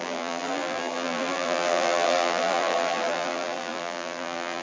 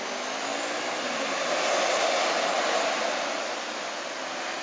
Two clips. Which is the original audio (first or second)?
second